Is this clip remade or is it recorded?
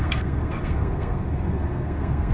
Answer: remade